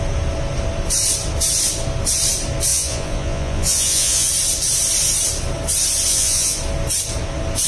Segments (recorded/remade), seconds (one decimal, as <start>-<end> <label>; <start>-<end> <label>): 0.0-2.7 recorded; 2.7-4.3 remade; 4.3-6.1 recorded; 6.1-6.6 remade; 6.6-7.7 recorded